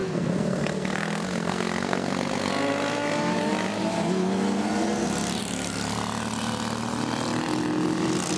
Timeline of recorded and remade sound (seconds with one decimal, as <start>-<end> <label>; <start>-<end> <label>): 0.0-2.5 remade; 2.5-8.4 recorded